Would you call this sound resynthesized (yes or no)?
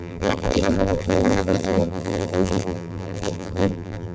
yes